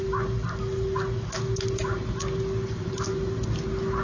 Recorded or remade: recorded